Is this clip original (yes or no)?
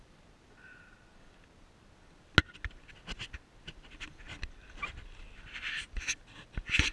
yes